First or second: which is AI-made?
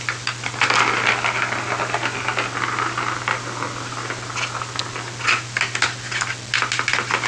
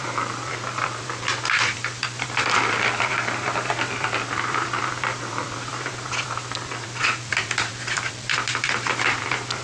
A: second